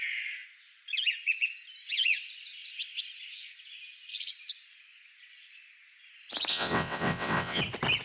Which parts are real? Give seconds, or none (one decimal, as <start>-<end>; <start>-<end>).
0.0-6.5; 7.6-8.0